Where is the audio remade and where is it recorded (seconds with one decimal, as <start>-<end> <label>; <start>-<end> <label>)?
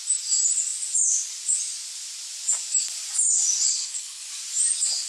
0.0-3.7 recorded; 3.7-4.3 remade; 4.3-5.1 recorded